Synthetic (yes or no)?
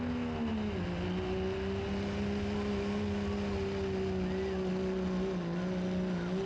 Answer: no